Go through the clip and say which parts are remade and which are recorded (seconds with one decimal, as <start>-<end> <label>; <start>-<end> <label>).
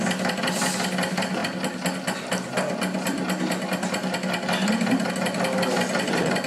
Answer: 0.0-6.5 recorded